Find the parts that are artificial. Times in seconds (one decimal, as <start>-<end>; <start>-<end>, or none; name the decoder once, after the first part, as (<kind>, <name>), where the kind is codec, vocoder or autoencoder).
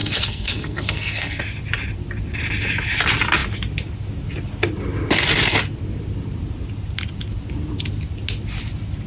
0.0-1.4 (codec, SNAC)